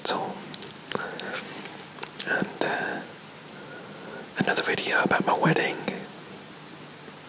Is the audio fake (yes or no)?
no